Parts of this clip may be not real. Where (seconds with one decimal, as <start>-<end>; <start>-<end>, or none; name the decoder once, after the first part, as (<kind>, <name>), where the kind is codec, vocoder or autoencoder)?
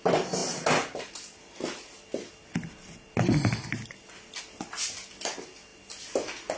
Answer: none